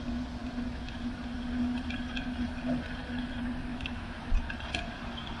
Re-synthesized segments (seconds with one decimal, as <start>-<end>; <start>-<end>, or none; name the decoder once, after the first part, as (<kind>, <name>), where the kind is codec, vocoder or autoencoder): 3.7-4.2 (autoencoder, DAC-VAE)